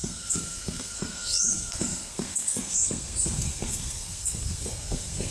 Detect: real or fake fake